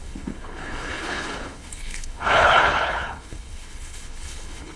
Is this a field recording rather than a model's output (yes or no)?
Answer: no